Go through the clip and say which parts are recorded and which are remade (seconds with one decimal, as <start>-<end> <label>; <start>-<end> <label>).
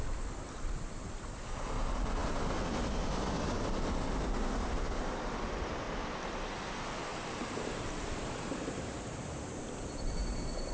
0.0-7.1 recorded; 7.1-9.6 remade; 9.6-10.7 recorded